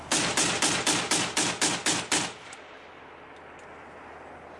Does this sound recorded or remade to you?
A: recorded